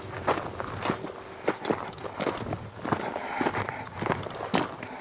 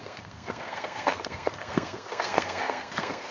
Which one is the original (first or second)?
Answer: first